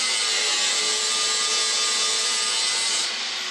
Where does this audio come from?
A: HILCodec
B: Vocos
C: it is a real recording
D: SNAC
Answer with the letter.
C